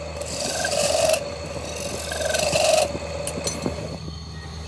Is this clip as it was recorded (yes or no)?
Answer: yes